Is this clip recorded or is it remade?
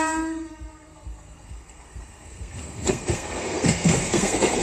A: remade